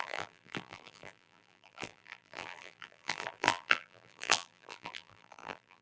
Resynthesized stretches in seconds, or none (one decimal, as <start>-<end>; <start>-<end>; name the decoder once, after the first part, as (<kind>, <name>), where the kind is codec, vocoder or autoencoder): 0.0-5.8 (vocoder, BigVGAN v2)